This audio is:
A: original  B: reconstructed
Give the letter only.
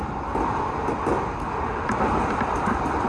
A